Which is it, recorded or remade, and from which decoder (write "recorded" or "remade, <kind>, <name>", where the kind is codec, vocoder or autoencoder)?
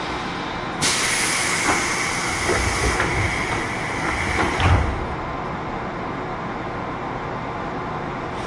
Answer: recorded